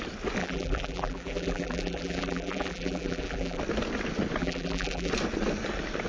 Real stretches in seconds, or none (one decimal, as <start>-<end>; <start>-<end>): 0.0-0.4; 3.6-4.4; 5.1-6.1